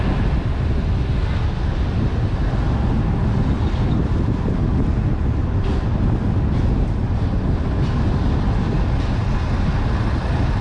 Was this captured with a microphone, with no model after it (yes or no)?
yes